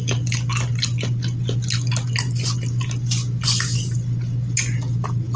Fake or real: real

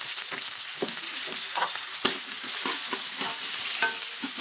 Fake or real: real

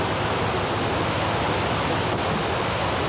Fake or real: real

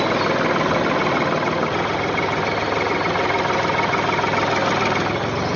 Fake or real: real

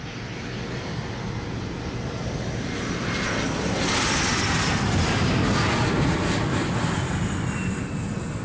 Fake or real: real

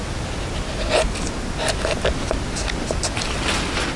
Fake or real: real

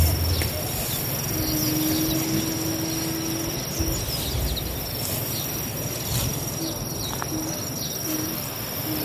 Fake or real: real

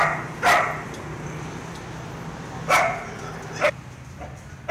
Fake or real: real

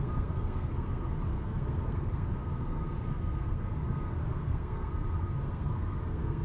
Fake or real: fake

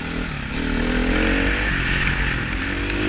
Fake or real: real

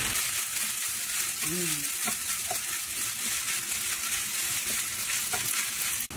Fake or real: real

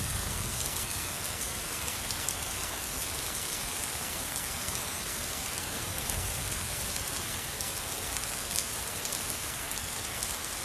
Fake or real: fake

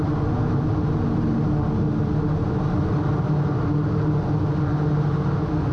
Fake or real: real